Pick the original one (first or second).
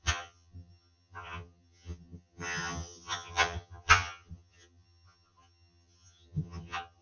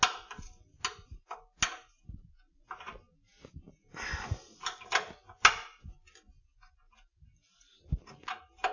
second